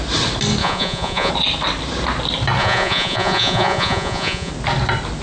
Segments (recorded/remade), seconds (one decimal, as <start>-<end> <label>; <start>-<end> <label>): 0.0-0.6 recorded; 0.6-1.3 remade; 1.3-2.6 recorded; 2.6-4.5 remade; 4.5-5.2 recorded